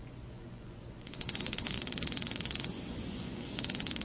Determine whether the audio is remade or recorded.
remade